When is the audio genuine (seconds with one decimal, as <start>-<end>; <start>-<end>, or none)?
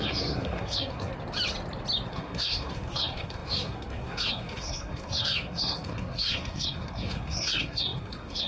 1.1-2.1